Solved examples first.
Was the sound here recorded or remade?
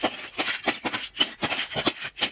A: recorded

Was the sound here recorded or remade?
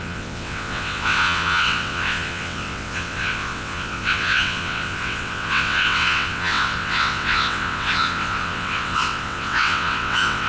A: remade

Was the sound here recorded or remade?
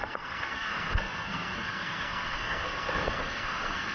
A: remade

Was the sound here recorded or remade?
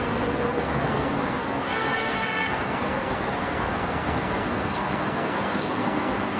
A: remade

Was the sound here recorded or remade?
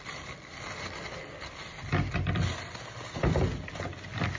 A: recorded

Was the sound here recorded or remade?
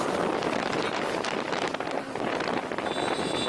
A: recorded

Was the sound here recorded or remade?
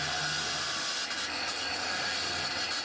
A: recorded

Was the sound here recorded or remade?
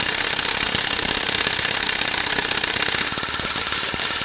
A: recorded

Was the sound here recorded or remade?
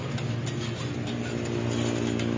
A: recorded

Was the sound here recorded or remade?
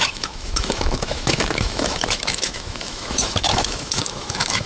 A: remade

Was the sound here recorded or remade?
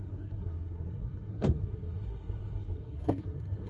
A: remade